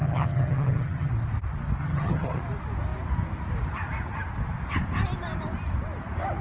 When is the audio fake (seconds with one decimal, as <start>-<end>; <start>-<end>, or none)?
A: 0.0-1.1; 1.8-2.4